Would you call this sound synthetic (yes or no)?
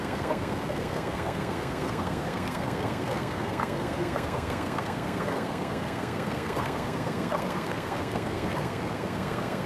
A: yes